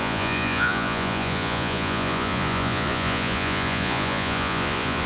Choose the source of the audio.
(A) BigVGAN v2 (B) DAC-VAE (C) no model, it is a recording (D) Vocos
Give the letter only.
D